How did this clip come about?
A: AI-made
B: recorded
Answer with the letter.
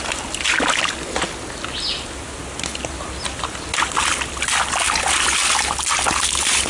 B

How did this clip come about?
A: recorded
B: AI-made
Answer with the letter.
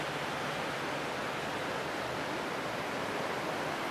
A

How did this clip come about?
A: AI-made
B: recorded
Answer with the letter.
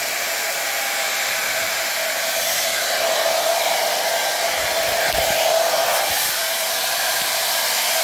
A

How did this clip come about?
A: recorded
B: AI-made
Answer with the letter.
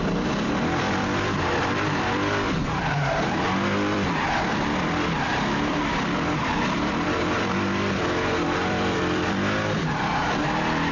B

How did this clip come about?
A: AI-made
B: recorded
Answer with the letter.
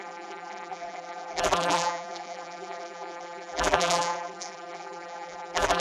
A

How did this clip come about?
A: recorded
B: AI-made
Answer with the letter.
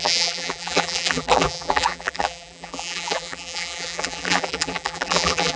B